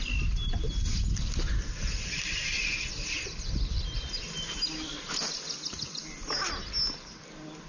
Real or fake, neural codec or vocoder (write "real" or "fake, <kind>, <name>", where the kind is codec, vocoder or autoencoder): real